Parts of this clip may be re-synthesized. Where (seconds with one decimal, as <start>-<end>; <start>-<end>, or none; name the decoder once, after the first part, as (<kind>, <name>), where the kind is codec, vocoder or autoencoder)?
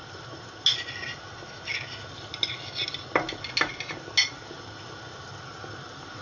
none